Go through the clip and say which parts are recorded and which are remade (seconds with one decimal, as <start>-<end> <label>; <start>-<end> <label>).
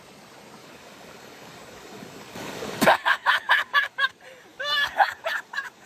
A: 0.0-0.6 recorded; 0.6-4.1 remade; 4.1-4.5 recorded; 4.5-5.9 remade